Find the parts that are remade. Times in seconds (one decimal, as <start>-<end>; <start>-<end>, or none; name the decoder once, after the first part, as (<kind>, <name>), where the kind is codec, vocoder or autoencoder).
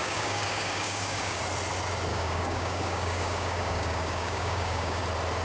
0.0-1.4 (codec, DAC); 2.1-5.0